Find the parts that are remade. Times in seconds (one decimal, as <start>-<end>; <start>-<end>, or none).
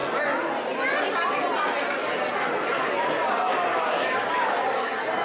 3.7-4.3